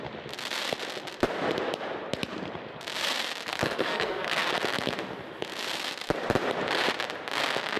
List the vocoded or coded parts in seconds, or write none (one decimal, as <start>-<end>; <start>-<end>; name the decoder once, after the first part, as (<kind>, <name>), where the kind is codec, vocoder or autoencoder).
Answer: 3.5-4.4 (codec, SNAC)